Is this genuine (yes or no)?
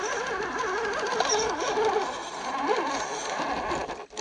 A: yes